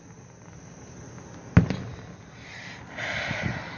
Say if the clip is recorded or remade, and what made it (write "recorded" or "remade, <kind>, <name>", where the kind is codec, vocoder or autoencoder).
recorded